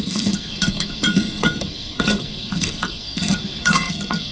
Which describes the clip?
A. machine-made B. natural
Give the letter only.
A